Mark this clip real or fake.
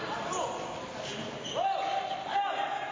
real